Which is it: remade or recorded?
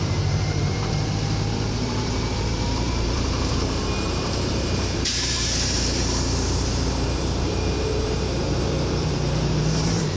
remade